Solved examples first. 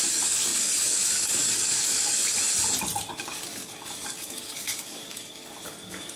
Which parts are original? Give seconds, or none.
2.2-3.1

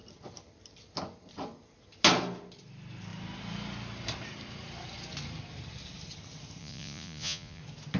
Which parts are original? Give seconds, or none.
0.0-6.6; 7.6-8.0